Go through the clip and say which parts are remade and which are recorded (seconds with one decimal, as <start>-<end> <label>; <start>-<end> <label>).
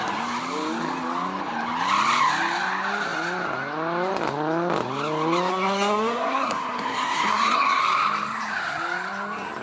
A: 0.0-5.5 recorded; 5.5-7.8 remade; 7.8-9.6 recorded